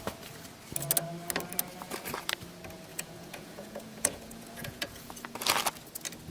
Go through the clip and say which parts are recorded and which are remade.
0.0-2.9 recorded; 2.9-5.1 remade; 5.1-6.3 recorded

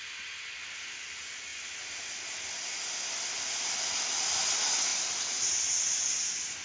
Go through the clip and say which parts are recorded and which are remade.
0.0-6.6 recorded

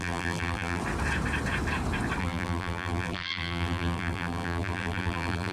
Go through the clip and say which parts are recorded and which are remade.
0.0-0.8 remade; 0.8-2.2 recorded; 2.2-5.5 remade